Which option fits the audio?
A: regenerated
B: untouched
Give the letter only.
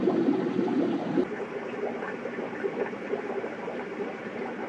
B